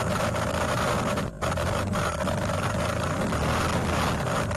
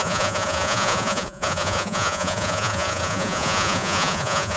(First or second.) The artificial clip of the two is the second